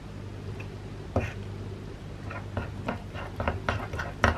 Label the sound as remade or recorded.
recorded